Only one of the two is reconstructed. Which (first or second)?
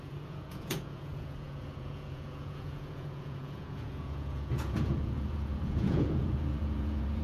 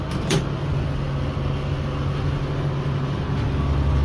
first